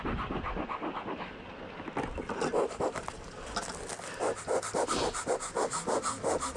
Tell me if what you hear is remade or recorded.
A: recorded